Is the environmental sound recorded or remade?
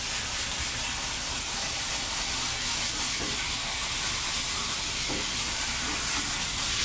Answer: recorded